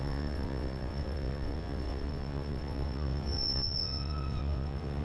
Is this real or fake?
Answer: fake